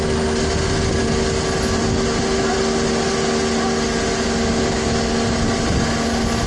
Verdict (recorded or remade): recorded